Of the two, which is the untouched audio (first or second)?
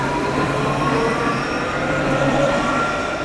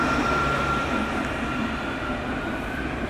second